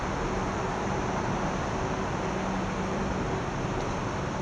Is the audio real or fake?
real